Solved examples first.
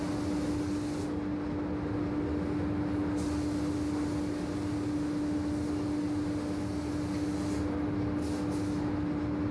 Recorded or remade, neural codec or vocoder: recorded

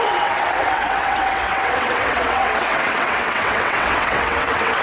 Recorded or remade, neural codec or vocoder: remade, vocoder, WaveNeXt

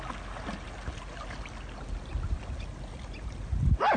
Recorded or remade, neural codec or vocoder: recorded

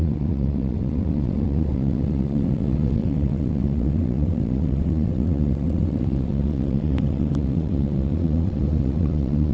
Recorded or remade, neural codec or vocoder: remade, vocoder, WaveNeXt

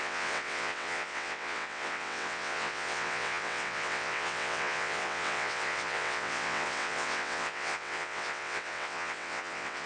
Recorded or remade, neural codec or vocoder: remade, vocoder, WaveNeXt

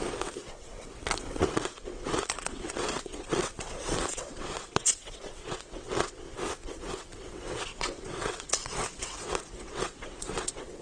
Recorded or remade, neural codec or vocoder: remade, vocoder, WaveNeXt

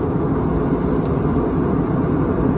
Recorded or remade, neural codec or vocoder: recorded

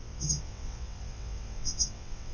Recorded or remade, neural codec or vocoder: remade, vocoder, WaveNeXt